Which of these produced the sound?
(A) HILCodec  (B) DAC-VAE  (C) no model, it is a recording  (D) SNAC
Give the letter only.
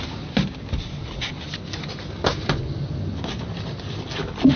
C